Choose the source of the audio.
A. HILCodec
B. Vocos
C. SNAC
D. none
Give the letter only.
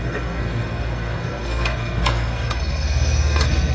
C